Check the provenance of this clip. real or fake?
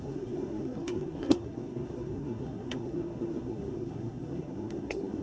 fake